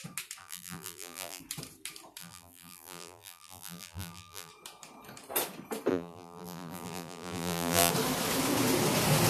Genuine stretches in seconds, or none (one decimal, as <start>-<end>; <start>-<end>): 0.0-0.4; 1.4-2.2; 4.5-5.9; 7.9-9.3